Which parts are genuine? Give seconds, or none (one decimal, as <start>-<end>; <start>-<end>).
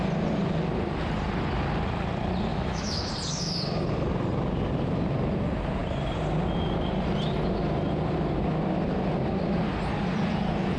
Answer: 0.0-2.5; 3.1-10.8